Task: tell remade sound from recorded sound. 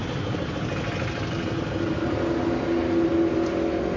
recorded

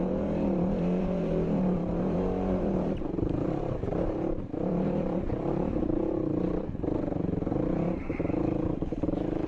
remade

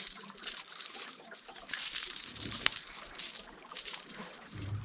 remade